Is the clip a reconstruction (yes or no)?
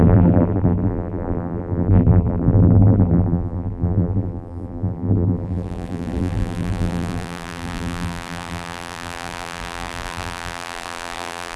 yes